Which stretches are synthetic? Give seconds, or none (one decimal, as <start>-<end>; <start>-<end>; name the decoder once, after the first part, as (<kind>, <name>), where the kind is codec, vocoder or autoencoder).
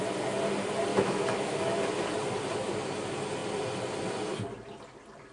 0.9-1.8 (autoencoder, DAC-VAE)